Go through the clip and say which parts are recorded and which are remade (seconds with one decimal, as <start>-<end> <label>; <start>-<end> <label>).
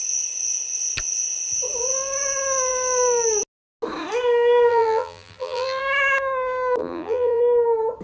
0.0-4.7 recorded; 4.7-5.8 remade; 5.8-6.8 recorded; 6.8-7.4 remade; 7.4-8.0 recorded